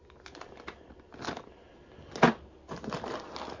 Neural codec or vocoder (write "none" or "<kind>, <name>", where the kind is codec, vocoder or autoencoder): none